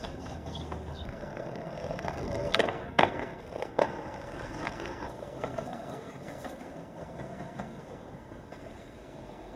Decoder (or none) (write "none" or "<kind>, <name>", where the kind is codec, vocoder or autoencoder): codec, SNAC